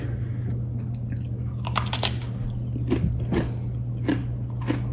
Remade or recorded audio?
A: recorded